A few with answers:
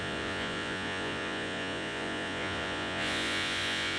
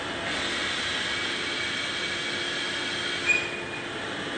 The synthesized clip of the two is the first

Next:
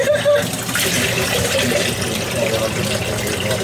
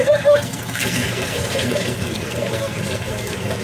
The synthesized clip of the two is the second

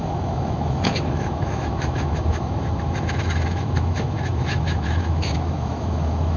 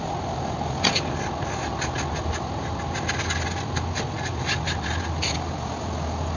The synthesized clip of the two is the first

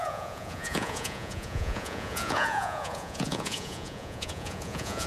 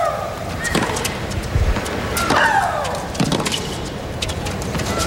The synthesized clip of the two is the first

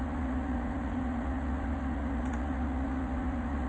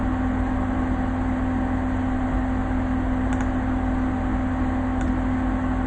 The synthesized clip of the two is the first